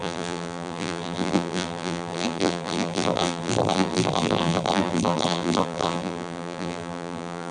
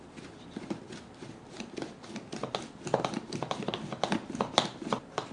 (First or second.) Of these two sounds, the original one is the second